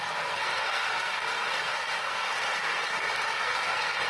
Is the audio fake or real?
fake